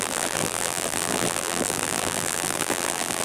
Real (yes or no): no